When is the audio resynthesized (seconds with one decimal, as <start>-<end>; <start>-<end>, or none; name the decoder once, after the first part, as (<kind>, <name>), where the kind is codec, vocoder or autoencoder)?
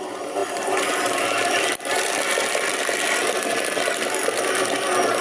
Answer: none